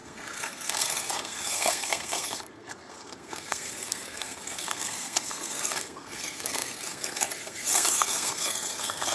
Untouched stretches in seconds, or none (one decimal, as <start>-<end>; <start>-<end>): none